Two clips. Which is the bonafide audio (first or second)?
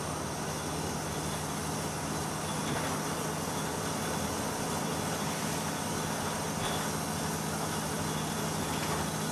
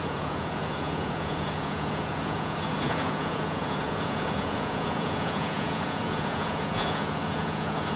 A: first